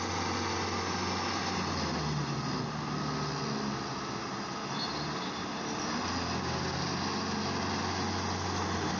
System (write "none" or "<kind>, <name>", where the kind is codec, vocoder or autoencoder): none